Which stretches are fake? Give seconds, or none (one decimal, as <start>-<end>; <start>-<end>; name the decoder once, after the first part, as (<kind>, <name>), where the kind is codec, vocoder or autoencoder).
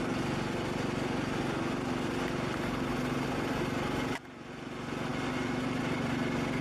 none